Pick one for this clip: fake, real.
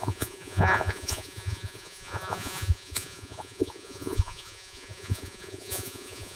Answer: fake